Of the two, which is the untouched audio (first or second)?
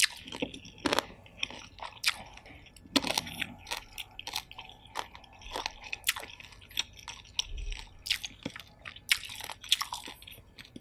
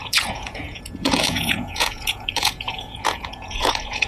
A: first